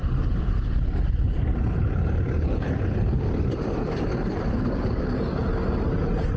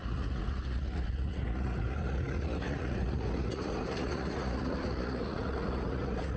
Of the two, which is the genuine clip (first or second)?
first